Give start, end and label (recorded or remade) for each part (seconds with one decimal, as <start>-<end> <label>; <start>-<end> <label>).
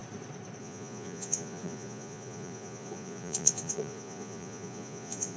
0.0-0.6 recorded; 0.6-5.4 remade